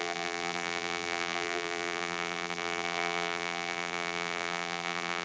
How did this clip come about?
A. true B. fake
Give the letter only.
B